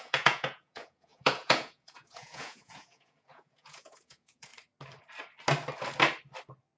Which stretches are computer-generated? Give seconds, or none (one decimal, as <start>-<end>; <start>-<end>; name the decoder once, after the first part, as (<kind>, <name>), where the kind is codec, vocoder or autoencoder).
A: 0.0-4.5 (vocoder, Vocos)